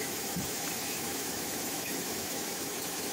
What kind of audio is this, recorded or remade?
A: remade